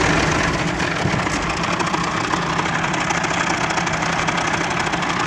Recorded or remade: recorded